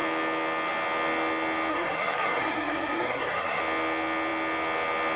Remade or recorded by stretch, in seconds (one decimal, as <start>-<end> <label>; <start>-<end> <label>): 0.0-1.7 recorded; 1.7-3.6 remade; 3.6-5.2 recorded